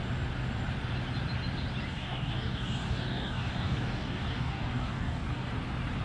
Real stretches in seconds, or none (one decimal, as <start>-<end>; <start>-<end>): 0.0-1.9; 5.5-6.0